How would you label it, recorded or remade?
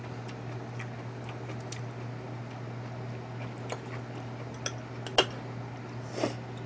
recorded